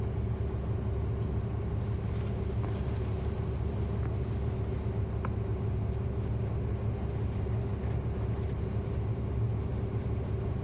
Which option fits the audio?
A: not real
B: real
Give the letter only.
B